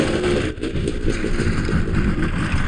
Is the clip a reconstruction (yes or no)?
no